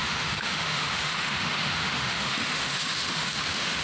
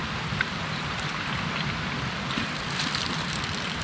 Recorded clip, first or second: second